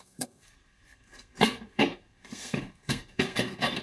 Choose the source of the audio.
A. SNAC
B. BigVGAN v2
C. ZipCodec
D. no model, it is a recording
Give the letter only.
A